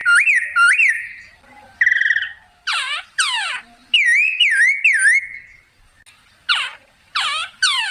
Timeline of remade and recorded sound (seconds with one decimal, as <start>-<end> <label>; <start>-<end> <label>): 0.0-7.9 recorded